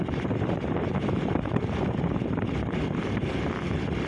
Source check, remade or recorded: remade